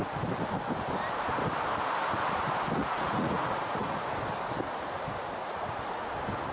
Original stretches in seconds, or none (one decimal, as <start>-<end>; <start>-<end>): 0.0-2.8; 4.1-5.4; 6.1-6.5